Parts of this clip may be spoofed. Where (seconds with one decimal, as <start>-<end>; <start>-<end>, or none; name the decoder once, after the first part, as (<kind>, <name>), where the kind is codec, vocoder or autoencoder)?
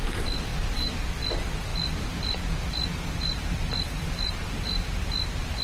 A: 0.5-1.0 (vocoder, BigVGAN v2)